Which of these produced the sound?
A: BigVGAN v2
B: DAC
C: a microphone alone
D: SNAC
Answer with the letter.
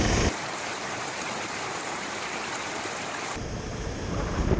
A